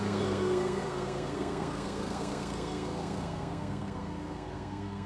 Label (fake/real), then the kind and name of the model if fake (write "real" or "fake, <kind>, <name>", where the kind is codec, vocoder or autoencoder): fake, codec, SNAC